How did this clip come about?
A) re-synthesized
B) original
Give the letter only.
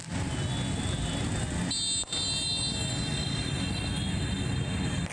B